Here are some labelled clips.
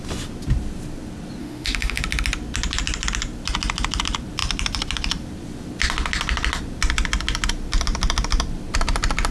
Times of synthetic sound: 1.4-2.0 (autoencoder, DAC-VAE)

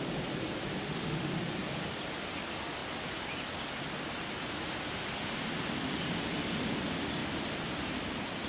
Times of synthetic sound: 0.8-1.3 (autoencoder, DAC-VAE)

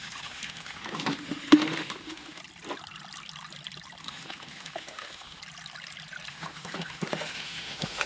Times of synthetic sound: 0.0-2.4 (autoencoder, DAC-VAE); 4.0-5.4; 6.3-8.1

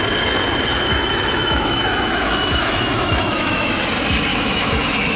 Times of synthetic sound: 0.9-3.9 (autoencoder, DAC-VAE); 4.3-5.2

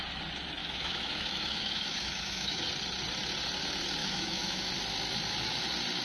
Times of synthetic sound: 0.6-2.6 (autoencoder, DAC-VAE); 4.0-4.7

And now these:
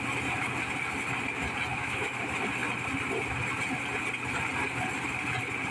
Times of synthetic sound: 1.7-2.2 (autoencoder, DAC-VAE)

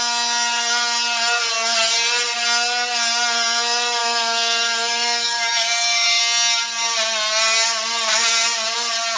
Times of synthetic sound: 4.0-6.2 (autoencoder, DAC-VAE)

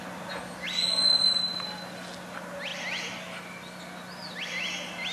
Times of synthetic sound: none